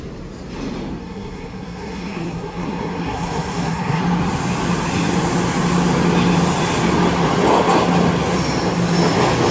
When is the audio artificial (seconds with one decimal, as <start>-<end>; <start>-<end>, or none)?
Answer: 1.0-4.0